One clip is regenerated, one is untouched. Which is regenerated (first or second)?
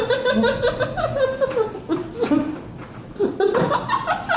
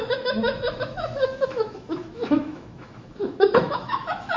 second